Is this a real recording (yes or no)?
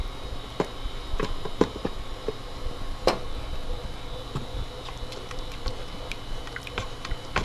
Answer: no